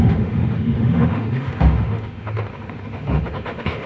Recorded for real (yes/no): no